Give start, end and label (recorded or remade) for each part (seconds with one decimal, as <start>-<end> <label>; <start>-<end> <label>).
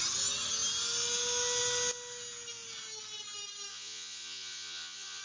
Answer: 0.0-3.7 recorded; 3.7-5.2 remade